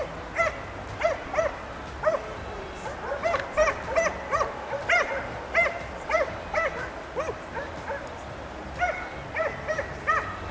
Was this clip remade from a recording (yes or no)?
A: no